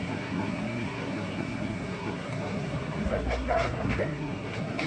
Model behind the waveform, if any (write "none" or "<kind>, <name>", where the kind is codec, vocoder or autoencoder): codec, SNAC